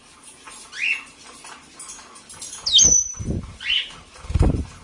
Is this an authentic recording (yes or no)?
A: yes